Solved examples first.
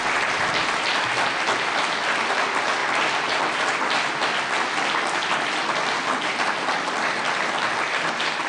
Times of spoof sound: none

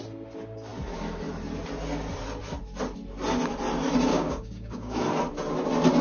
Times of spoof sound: 4.1-5.0